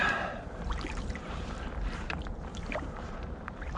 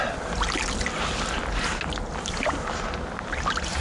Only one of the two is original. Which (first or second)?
second